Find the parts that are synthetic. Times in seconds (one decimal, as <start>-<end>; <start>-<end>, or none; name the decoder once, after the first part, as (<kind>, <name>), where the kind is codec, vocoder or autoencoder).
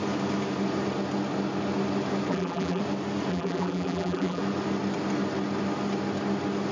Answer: 2.3-2.8 (vocoder, BigVGAN v2); 3.3-4.4